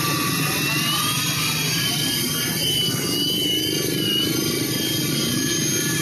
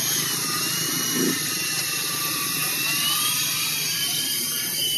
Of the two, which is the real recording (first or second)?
first